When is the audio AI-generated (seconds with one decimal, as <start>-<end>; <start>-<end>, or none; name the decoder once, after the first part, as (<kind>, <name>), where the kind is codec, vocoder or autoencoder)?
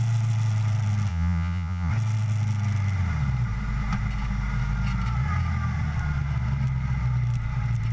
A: 1.1-1.9 (vocoder, Vocos)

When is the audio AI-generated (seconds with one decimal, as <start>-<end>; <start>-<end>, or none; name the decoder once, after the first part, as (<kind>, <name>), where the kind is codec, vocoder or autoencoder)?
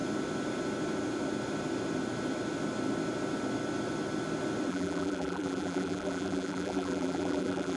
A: 4.7-7.8 (vocoder, BigVGAN v2)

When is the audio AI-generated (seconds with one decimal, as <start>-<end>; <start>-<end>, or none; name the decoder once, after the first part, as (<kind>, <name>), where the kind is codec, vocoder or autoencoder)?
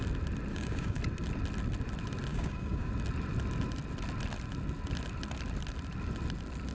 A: 0.5-1.0 (codec, DAC); 2.3-2.9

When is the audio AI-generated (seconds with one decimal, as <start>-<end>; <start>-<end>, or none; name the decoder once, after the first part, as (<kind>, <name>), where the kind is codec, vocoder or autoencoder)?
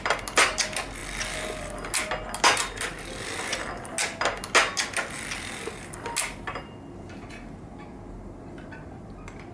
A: none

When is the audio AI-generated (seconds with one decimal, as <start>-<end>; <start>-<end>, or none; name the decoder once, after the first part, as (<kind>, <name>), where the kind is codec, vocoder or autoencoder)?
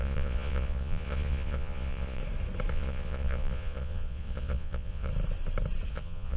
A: 0.0-2.2 (vocoder, Vocos); 2.7-5.1; 5.9-6.4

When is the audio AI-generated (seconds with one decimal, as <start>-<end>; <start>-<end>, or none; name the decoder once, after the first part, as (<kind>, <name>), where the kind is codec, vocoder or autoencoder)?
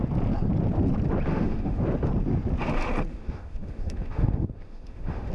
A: 1.3-1.8 (autoencoder, DAC-VAE); 3.1-5.3